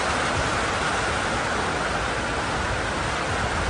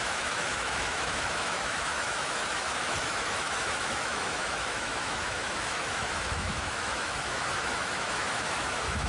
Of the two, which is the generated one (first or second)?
second